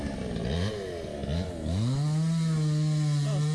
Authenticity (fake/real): real